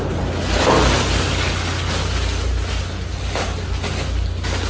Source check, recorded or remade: recorded